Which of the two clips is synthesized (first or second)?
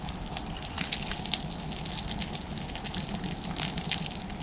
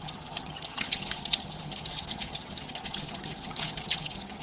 second